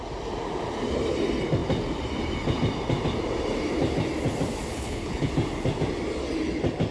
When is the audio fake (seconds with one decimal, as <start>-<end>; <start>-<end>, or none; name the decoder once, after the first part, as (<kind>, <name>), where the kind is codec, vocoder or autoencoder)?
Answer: 4.7-5.3 (codec, HILCodec)